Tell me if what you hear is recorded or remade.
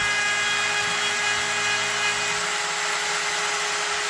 recorded